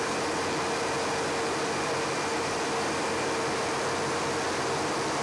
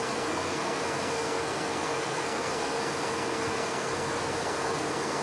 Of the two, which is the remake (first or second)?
second